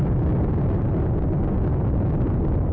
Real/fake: real